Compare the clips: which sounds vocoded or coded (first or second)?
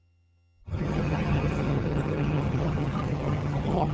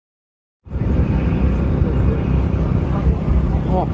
first